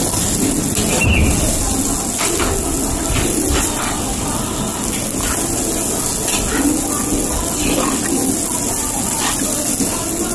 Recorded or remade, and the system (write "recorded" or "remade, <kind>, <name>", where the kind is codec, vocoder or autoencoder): recorded